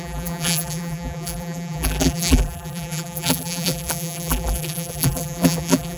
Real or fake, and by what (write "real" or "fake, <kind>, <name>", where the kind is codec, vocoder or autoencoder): fake, vocoder, BigVGAN v2